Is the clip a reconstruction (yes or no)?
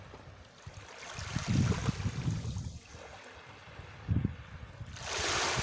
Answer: no